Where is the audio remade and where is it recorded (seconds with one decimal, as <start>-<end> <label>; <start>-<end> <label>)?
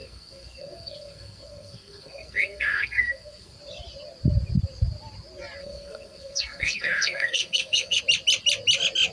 0.0-3.6 remade; 3.6-5.6 recorded; 5.6-8.0 remade; 8.0-9.1 recorded